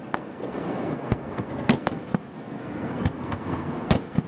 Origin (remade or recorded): remade